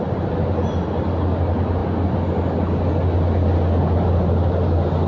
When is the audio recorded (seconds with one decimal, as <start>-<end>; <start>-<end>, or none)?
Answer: 0.0-5.1